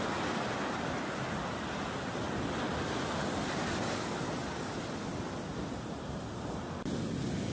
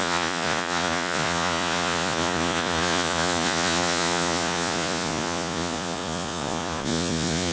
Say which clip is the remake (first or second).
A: second